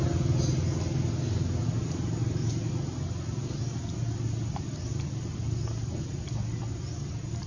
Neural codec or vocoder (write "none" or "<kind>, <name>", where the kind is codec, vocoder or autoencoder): none